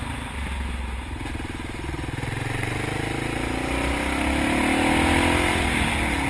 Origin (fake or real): real